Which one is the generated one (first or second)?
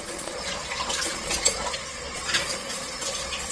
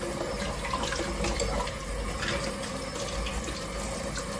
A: first